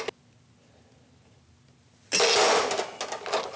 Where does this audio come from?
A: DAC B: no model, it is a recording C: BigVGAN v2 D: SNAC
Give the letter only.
B